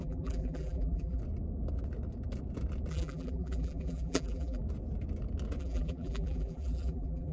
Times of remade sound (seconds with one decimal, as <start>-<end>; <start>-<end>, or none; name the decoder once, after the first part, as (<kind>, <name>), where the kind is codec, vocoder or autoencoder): 0.0-1.2 (vocoder, BigVGAN v2); 2.9-4.6; 5.6-7.3